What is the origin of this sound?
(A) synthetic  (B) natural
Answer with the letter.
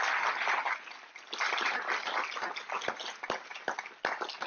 B